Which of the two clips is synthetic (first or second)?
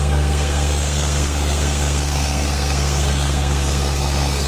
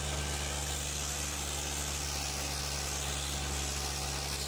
first